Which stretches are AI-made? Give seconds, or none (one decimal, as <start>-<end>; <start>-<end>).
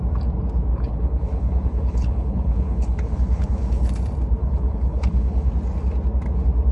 0.7-3.9; 4.4-5.5